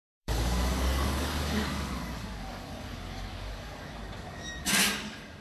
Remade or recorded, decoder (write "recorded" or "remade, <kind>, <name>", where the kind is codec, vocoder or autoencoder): remade, codec, DAC